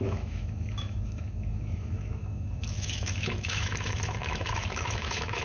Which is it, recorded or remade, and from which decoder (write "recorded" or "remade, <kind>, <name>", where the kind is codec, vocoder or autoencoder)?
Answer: remade, autoencoder, DAC-VAE